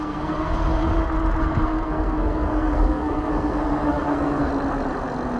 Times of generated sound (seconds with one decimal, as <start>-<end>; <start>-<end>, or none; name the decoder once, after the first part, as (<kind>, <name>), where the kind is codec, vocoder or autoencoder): 0.0-0.8 (codec, SNAC); 1.4-4.5